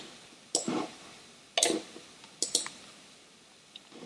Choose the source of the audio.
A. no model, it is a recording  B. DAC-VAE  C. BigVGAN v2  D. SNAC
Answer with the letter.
A